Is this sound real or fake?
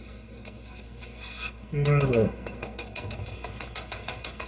fake